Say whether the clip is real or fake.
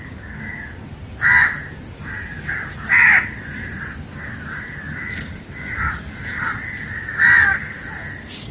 real